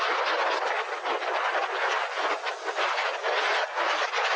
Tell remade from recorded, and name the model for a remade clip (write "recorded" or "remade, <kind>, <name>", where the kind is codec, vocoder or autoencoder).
recorded